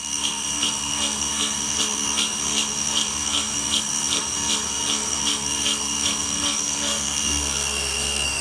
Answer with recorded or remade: remade